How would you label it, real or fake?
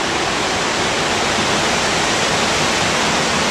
real